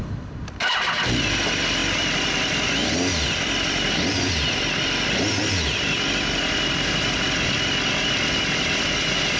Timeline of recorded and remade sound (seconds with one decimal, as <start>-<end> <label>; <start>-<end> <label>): 0.0-9.4 recorded